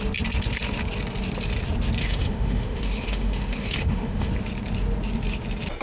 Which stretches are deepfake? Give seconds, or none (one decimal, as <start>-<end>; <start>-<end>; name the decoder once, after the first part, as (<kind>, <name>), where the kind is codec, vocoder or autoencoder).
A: 2.0-4.3 (autoencoder, DAC-VAE)